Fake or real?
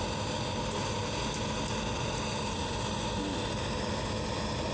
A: real